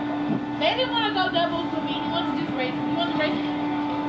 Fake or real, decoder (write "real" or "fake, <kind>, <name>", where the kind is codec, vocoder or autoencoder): real